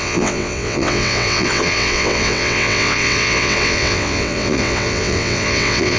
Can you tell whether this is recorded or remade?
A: remade